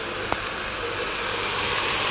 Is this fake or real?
real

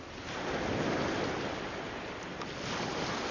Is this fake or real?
real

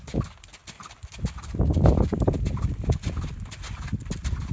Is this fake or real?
real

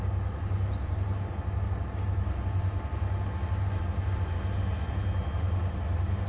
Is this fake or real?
real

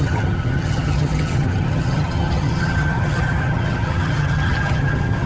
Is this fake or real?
fake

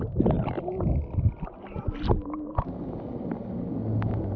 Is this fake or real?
real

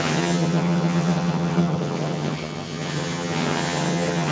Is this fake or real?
fake